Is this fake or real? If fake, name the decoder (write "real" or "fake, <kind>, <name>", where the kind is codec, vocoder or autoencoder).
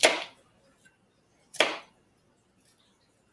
real